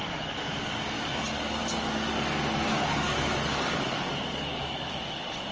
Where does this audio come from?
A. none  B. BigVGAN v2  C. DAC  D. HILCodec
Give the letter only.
C